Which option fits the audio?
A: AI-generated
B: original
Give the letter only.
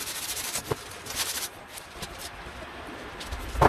A